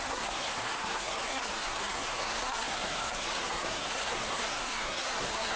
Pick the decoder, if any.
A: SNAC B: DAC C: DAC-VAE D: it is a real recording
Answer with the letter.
A